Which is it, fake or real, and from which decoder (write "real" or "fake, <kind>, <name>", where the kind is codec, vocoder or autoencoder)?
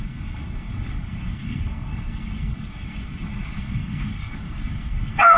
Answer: fake, codec, SNAC